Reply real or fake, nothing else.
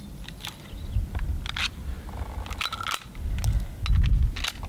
real